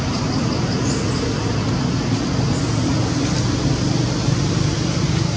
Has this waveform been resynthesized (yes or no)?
no